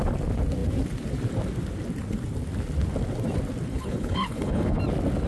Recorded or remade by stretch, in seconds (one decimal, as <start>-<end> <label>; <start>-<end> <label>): 0.0-3.7 recorded; 3.7-4.8 remade; 4.8-5.3 recorded